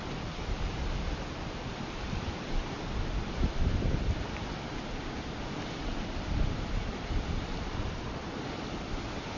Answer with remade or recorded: remade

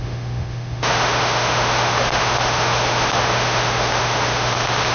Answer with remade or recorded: remade